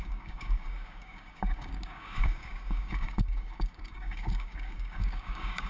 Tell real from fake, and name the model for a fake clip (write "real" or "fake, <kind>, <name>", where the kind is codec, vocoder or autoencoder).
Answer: fake, codec, DAC